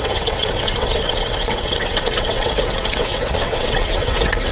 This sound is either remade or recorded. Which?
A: remade